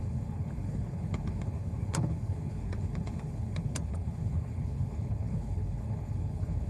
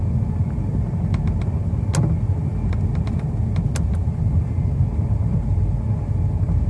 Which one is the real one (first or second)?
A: second